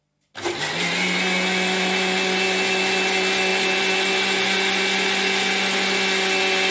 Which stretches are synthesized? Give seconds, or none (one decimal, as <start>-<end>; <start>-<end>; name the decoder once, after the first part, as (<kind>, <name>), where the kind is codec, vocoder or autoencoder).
none